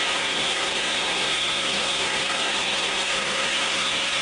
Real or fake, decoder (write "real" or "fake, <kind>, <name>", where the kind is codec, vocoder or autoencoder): fake, codec, SNAC